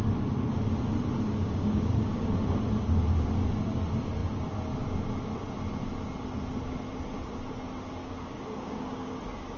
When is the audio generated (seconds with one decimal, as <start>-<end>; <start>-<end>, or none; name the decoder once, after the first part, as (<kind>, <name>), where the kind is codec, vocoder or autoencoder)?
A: 1.4-2.3 (codec, DAC); 8.0-9.2